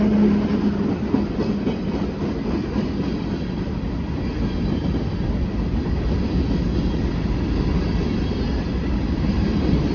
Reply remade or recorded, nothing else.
recorded